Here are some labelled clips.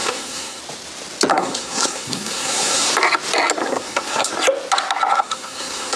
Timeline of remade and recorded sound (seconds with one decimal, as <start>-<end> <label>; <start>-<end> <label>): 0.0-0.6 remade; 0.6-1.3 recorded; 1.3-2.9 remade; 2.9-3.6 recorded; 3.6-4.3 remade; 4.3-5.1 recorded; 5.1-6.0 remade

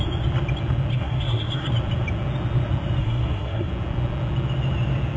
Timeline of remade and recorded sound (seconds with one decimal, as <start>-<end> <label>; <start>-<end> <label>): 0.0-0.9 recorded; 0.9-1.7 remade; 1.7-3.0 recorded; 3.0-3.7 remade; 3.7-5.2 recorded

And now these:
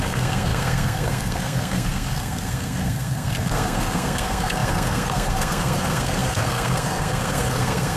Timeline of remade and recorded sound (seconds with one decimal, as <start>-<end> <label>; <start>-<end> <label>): 0.0-8.0 remade

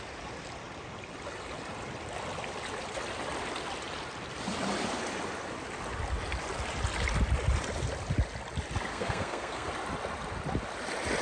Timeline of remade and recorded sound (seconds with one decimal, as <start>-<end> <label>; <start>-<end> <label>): 0.0-8.9 recorded; 8.9-9.7 remade; 9.7-11.2 recorded

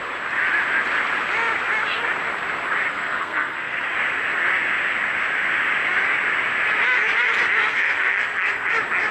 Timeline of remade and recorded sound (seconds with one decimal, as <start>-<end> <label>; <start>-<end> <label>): 0.0-2.9 recorded; 2.9-3.8 remade; 3.8-7.7 recorded; 7.7-8.7 remade; 8.7-9.1 recorded